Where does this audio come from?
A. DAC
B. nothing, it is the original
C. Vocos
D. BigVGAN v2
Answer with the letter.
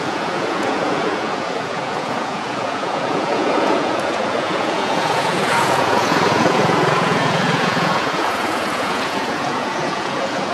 C